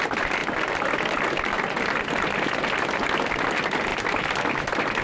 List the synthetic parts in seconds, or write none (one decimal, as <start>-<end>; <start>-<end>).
none